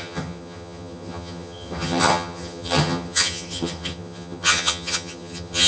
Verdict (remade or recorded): remade